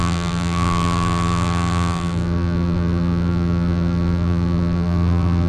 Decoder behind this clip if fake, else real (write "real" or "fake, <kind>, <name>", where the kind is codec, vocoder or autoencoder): fake, vocoder, BigVGAN v2